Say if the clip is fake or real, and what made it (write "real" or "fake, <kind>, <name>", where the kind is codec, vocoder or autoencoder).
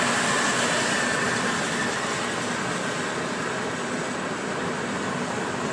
real